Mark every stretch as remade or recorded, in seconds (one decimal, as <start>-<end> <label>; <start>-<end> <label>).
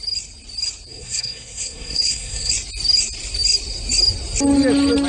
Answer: 0.0-0.9 recorded; 0.9-2.5 remade; 2.5-5.1 recorded